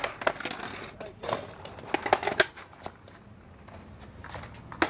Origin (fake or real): real